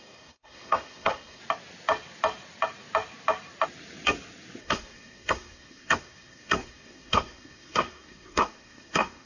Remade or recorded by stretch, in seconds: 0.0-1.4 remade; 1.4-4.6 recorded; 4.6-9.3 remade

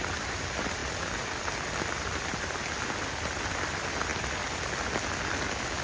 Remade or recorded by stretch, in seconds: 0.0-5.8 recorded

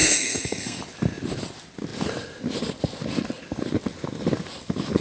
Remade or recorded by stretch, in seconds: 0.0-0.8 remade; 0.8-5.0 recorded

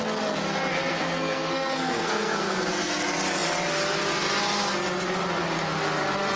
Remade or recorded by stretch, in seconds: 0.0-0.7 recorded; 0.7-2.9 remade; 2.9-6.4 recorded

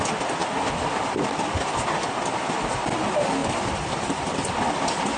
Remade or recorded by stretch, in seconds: 0.0-5.2 recorded